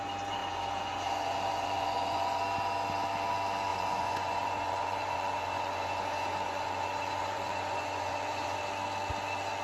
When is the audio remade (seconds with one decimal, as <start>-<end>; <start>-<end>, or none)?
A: 0.4-2.4; 3.7-8.6